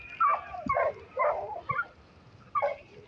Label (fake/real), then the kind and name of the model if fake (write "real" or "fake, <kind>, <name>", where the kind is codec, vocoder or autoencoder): real